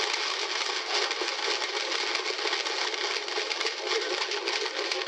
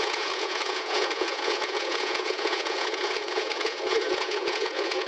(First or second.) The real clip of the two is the first